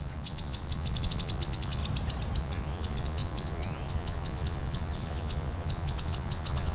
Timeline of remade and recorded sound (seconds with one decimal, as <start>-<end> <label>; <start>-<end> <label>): 0.0-1.8 remade; 1.8-2.4 recorded; 2.4-6.7 remade